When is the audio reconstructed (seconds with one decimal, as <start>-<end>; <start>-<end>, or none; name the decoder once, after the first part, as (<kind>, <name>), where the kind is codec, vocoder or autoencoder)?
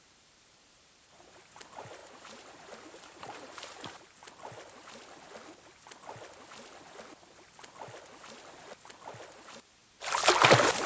0.0-4.2 (vocoder, BigVGAN v2); 9.4-9.8